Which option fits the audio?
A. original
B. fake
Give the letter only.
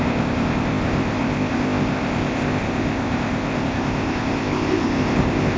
B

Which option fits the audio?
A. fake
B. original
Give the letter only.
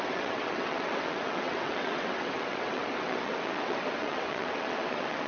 A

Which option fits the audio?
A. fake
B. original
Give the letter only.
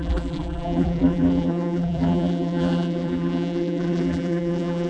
A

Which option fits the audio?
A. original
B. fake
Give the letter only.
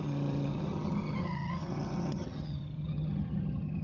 B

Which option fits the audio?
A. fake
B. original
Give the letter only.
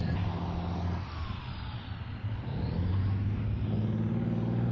B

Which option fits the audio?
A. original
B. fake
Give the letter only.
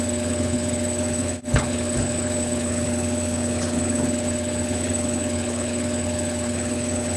B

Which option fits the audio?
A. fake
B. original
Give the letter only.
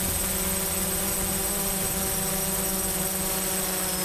B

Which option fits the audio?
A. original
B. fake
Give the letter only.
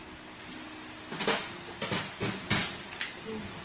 A